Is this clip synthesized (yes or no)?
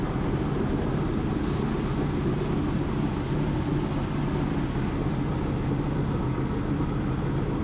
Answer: no